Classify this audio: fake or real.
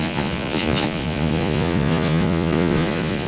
fake